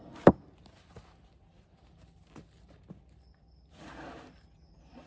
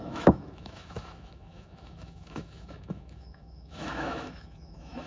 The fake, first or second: second